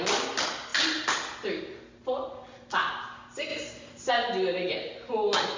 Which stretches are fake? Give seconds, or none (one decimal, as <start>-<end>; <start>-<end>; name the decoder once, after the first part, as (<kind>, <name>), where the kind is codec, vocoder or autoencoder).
3.5-4.1 (vocoder, BigVGAN v2)